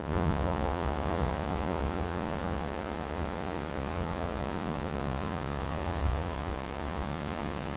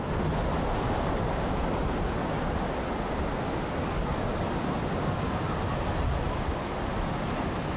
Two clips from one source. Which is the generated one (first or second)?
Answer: first